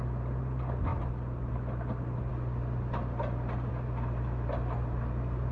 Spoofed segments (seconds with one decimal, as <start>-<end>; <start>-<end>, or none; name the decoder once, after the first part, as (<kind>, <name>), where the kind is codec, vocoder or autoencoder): none